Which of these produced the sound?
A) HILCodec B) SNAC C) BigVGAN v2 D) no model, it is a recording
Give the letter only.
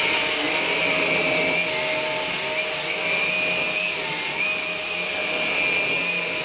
D